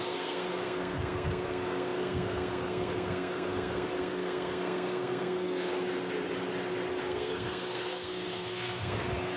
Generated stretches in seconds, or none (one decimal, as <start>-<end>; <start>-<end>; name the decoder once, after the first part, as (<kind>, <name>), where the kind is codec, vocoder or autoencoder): 0.0-5.7 (codec, SNAC); 7.0-9.4